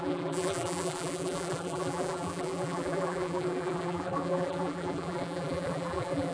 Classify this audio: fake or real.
fake